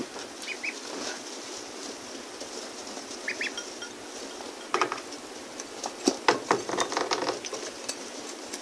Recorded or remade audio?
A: recorded